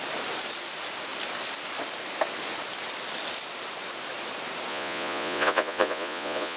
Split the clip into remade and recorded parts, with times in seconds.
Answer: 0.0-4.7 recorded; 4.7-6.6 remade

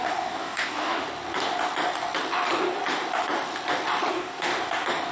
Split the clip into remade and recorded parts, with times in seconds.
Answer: 0.0-1.0 remade; 1.0-4.1 recorded; 4.1-4.5 remade; 4.5-5.1 recorded